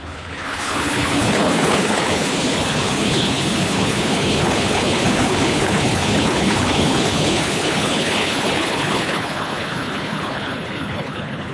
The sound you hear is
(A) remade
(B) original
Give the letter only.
A